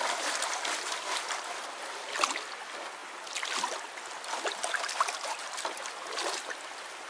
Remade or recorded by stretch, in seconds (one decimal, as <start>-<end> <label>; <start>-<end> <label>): 0.0-7.1 recorded

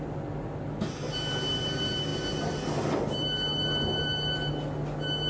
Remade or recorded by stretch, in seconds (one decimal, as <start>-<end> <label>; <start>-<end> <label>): 0.0-5.3 recorded

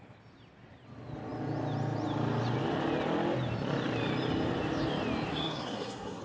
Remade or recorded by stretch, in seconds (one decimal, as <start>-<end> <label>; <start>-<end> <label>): 0.0-5.3 recorded; 5.3-6.2 remade

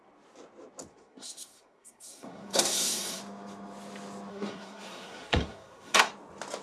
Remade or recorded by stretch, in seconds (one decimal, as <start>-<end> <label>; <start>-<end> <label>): 0.0-0.9 recorded; 0.9-3.2 remade; 3.2-4.3 recorded; 4.3-6.1 remade; 6.1-6.6 recorded

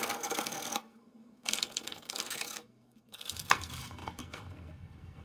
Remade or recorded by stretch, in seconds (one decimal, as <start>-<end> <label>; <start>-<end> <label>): 0.0-5.2 remade